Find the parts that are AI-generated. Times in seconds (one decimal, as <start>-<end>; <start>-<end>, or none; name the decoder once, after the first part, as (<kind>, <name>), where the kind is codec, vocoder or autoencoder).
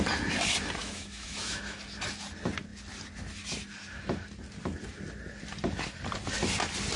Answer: 0.8-1.8 (autoencoder, DAC-VAE)